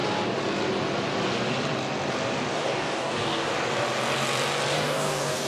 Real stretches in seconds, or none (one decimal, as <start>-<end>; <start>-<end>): 0.0-2.5; 3.5-4.7